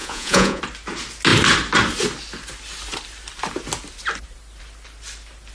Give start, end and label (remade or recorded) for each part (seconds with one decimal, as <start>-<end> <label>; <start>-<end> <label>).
0.0-0.6 remade; 0.6-5.5 recorded